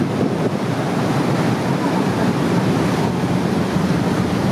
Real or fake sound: fake